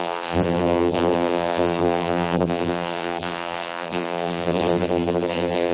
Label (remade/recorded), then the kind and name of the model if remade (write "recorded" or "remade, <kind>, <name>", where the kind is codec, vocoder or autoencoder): remade, vocoder, BigVGAN v2